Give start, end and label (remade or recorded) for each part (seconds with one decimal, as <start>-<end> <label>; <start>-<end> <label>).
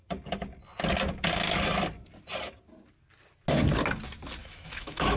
0.0-4.4 recorded; 4.4-5.2 remade